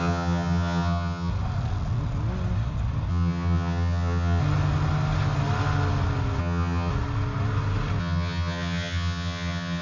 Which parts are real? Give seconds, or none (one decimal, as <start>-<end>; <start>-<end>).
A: 1.3-3.1; 4.4-6.4; 6.9-8.0